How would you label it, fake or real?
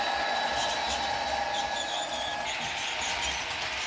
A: real